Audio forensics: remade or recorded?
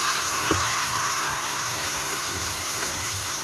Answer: remade